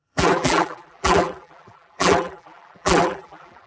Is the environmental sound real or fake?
fake